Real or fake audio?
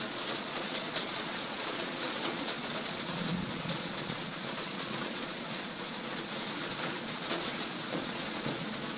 fake